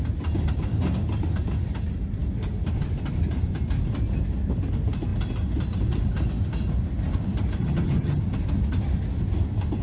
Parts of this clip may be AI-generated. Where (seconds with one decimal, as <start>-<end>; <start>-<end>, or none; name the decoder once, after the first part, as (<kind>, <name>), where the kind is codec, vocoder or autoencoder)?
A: 7.6-8.2 (vocoder, HiFi-GAN)